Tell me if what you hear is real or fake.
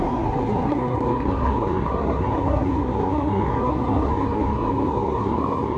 fake